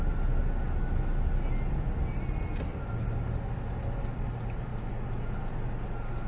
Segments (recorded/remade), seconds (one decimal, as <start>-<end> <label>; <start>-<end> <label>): 0.0-6.3 recorded

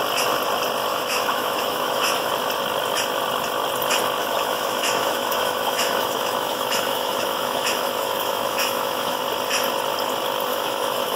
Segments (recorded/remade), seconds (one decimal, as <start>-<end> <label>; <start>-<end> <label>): 0.0-0.9 recorded; 0.9-2.3 remade; 2.3-4.2 recorded; 4.2-9.2 remade; 9.2-10.5 recorded; 10.5-11.2 remade

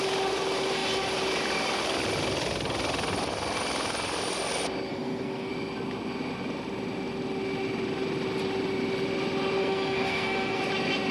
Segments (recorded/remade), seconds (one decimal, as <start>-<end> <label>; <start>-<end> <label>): 0.0-4.9 recorded; 4.9-5.5 remade; 5.5-9.6 recorded; 9.6-10.6 remade; 10.6-11.1 recorded

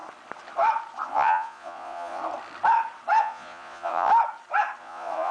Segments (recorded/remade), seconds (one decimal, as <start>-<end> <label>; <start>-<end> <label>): 0.0-1.1 recorded; 1.1-2.2 remade; 2.2-3.2 recorded; 3.2-4.1 remade; 4.1-4.8 recorded; 4.8-5.3 remade